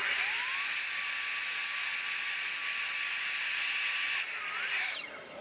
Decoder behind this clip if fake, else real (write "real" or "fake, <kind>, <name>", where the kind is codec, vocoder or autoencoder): real